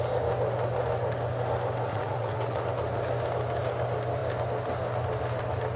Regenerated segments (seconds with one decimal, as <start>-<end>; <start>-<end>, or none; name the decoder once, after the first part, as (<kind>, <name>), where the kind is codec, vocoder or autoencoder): 1.9-2.6 (vocoder, WaveNeXt)